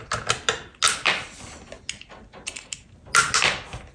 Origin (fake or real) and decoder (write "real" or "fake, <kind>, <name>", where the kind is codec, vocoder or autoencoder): real